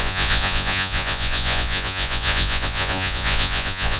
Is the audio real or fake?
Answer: fake